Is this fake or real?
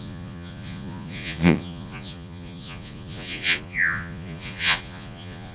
fake